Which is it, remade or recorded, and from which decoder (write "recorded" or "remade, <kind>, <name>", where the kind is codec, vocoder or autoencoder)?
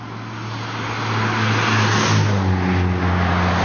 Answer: recorded